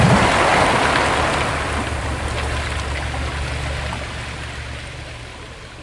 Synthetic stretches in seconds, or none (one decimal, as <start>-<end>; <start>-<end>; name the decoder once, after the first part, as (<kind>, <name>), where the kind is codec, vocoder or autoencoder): none